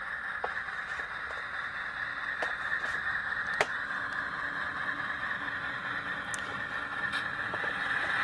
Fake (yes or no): no